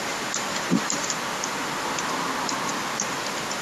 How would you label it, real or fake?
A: real